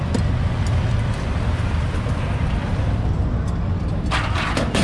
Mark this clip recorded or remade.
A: recorded